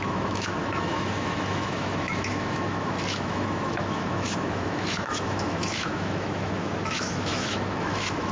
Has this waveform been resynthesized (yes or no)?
yes